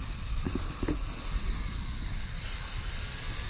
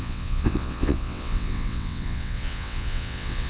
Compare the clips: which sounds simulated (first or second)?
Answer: second